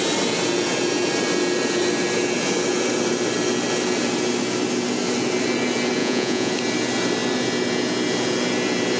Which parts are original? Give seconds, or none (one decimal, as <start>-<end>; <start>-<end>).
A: 0.0-6.0; 6.5-9.0